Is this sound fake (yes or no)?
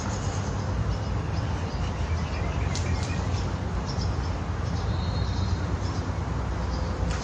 no